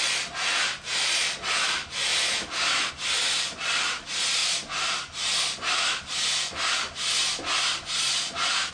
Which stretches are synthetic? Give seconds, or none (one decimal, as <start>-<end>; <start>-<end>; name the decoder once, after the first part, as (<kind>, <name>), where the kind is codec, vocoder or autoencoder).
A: none